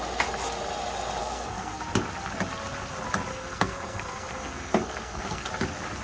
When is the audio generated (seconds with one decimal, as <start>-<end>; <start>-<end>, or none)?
1.2-1.8; 3.3-5.5